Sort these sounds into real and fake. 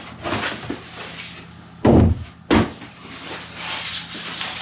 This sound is real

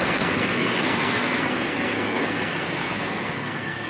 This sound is fake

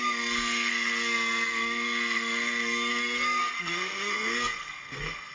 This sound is fake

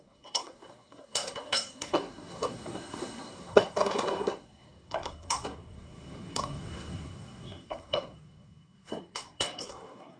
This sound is fake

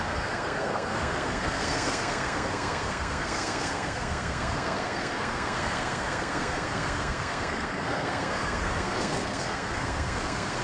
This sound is fake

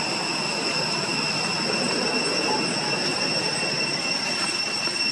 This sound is real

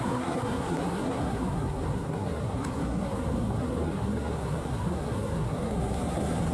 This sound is fake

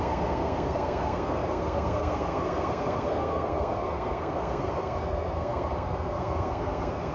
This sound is fake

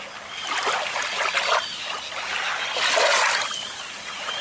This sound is real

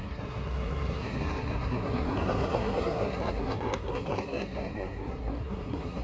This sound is fake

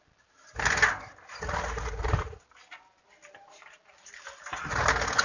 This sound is real